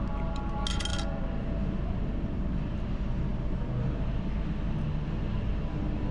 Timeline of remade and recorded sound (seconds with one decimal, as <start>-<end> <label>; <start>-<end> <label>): 0.0-6.1 recorded